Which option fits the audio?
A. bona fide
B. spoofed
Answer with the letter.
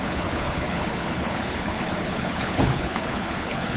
B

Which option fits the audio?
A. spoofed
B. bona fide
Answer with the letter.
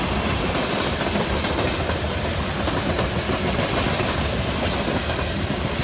B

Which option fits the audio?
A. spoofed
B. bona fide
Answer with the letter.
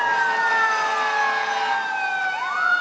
B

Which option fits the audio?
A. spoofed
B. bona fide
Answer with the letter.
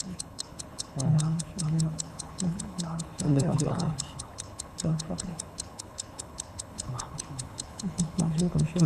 A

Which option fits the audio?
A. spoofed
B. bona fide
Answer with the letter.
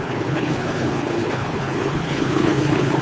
A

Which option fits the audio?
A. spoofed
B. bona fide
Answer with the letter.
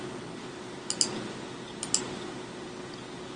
B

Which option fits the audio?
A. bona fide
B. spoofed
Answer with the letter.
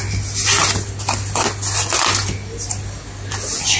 A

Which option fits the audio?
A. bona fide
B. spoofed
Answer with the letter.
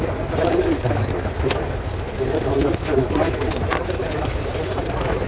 A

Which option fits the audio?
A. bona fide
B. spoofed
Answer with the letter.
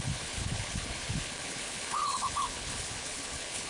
B